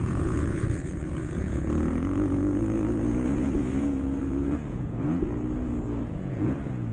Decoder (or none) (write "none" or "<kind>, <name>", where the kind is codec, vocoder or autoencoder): vocoder, Vocos